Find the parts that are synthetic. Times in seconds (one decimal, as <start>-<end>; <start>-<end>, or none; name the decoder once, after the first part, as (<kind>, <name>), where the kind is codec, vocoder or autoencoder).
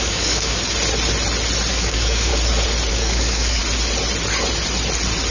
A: 0.0-0.6 (codec, DAC); 1.7-2.3; 2.9-3.6